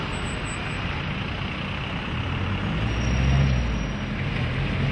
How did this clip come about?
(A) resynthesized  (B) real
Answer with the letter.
B